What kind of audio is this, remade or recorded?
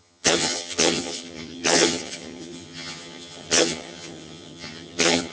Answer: remade